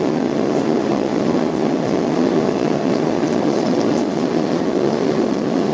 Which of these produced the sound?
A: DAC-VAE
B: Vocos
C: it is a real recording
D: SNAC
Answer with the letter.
B